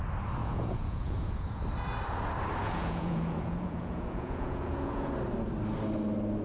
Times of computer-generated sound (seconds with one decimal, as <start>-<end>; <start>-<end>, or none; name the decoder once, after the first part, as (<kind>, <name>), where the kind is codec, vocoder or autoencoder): 0.4-1.6 (vocoder, Vocos); 2.6-5.1